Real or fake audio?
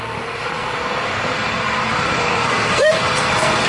fake